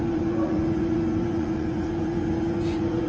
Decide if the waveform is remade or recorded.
remade